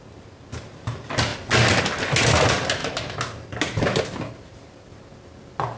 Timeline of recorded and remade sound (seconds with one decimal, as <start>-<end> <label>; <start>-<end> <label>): 0.0-5.8 recorded